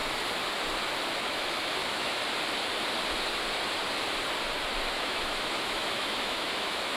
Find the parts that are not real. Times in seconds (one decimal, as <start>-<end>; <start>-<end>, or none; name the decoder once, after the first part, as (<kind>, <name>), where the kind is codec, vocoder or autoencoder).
1.2-2.2 (autoencoder, DAC-VAE); 4.9-7.0